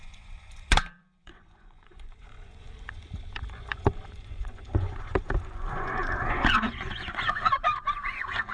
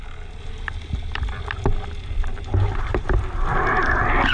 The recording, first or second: second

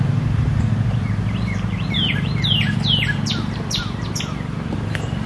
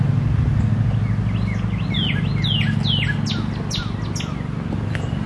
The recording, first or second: second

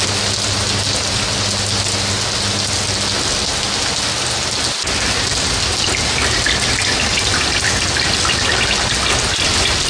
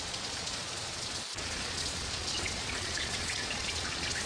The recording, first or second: first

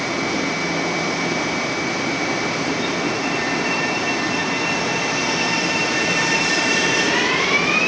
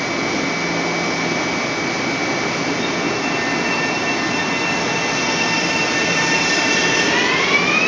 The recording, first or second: second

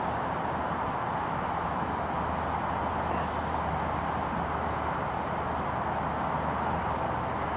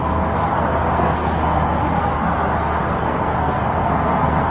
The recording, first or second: first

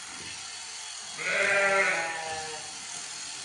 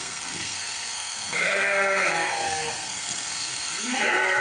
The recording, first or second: first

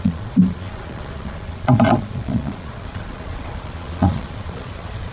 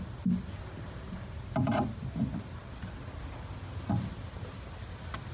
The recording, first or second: second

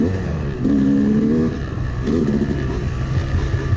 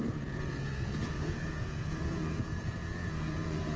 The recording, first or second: first